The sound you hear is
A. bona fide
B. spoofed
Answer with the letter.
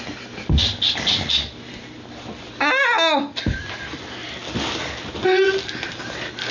A